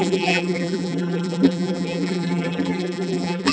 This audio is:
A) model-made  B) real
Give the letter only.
A